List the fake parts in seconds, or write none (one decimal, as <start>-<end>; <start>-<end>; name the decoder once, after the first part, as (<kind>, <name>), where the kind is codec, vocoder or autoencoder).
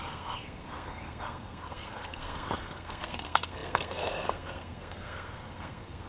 0.0-6.1 (codec, SNAC)